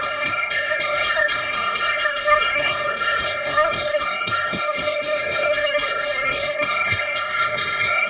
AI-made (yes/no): yes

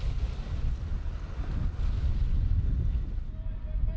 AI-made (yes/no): no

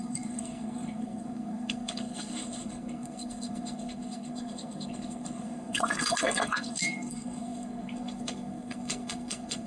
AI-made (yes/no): yes